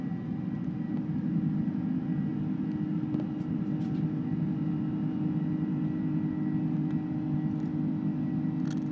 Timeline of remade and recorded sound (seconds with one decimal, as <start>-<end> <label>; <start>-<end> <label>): 0.0-8.9 recorded